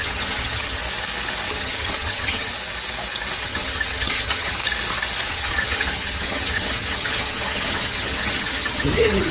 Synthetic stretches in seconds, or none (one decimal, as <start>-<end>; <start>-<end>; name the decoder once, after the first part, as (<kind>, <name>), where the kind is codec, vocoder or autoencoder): 0.0-0.8 (vocoder, HiFi-GAN); 1.5-2.5; 3.4-4.6; 5.3-9.3